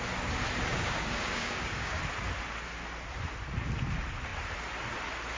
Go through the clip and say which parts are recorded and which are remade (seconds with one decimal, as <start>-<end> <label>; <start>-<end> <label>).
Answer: 0.0-0.7 recorded; 0.7-2.0 remade; 2.0-5.4 recorded